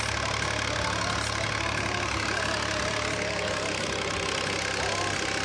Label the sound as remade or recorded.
recorded